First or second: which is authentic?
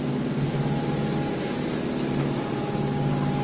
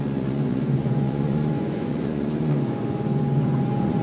first